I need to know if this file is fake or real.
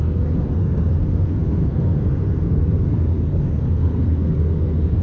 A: fake